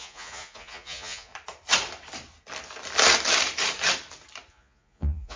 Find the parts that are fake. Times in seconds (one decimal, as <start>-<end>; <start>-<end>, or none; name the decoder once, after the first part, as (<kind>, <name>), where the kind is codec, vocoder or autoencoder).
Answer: 0.0-1.3 (vocoder, Vocos); 4.5-5.4